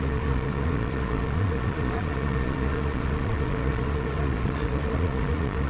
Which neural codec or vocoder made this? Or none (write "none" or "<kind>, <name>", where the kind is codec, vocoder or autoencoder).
vocoder, Vocos